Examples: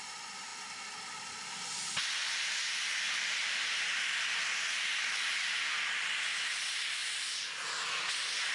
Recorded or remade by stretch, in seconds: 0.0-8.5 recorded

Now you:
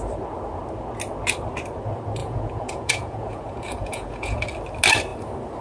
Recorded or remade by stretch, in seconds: 0.0-2.2 recorded; 2.2-4.4 remade; 4.4-5.6 recorded

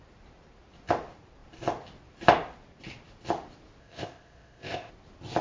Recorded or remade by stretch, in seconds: 0.0-3.8 recorded; 3.8-4.9 remade; 4.9-5.4 recorded

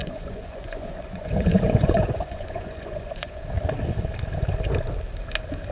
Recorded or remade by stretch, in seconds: 0.0-3.4 remade; 3.4-5.7 recorded

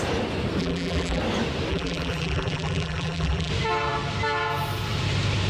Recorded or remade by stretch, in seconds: 0.0-0.6 recorded; 0.6-1.2 remade; 1.2-1.7 recorded; 1.7-3.5 remade; 3.5-5.5 recorded

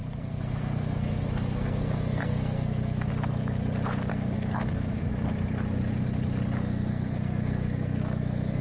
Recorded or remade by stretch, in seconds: 0.0-3.1 remade; 3.1-4.1 recorded; 4.1-5.1 remade; 5.1-6.6 recorded; 6.6-8.6 remade

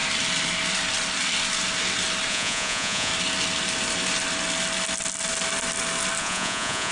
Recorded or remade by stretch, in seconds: 0.0-2.3 recorded; 2.3-3.1 remade; 3.1-6.2 recorded; 6.2-6.9 remade